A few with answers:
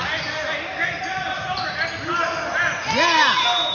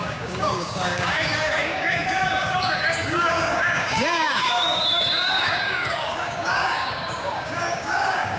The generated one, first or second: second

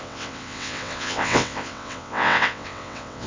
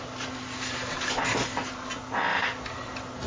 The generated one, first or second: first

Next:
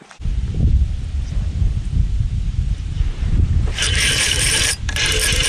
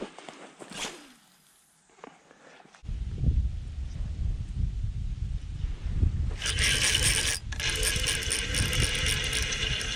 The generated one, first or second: first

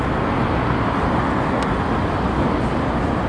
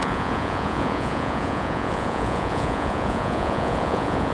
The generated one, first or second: second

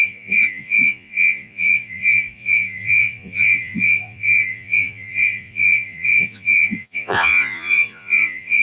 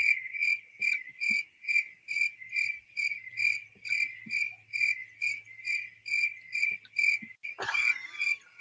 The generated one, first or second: first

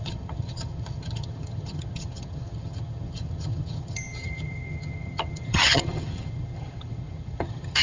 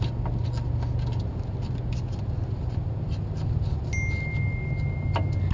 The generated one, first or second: first